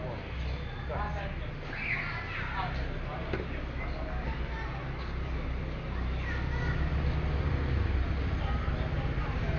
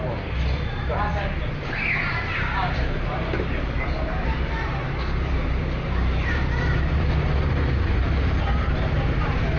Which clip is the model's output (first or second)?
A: second